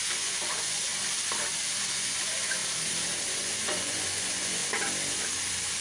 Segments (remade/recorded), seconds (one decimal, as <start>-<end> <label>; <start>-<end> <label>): 0.0-0.9 remade; 0.9-1.9 recorded; 1.9-2.6 remade; 2.6-3.4 recorded; 3.4-4.6 remade; 4.6-5.8 recorded